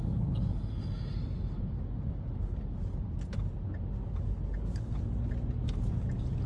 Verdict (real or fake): real